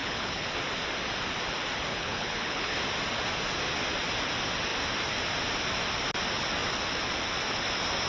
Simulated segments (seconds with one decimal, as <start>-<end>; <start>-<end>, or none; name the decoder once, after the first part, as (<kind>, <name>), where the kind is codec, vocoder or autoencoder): 0.0-0.5 (codec, HILCodec); 1.9-2.8